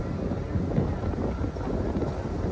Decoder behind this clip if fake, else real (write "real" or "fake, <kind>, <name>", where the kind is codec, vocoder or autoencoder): real